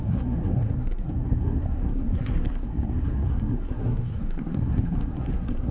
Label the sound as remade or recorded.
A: remade